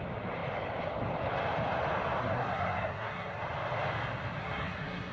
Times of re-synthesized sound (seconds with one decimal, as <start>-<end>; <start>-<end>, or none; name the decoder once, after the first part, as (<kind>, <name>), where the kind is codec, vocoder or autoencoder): 2.2-3.4 (codec, SNAC); 4.4-5.1